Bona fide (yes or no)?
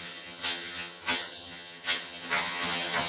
no